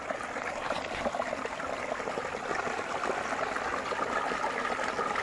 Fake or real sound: real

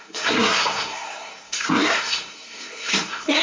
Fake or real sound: fake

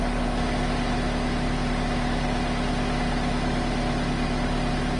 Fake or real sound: real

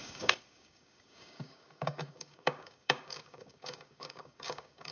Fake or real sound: fake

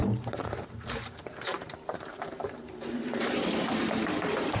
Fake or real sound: fake